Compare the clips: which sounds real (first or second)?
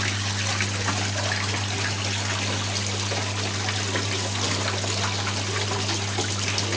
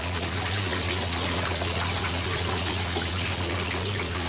first